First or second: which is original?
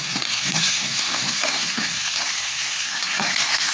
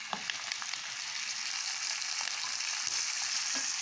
second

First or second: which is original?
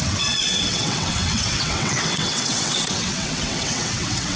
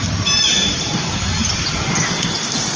second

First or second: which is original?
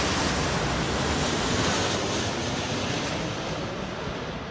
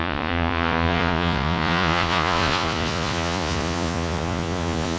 first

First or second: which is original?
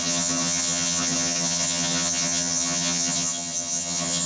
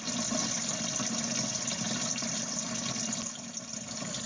second